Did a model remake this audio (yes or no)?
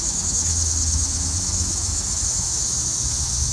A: yes